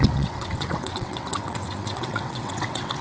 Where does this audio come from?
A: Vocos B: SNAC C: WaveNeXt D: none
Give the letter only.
C